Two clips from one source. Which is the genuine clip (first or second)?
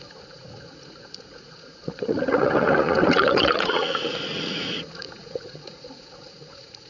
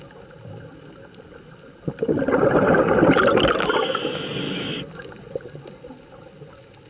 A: second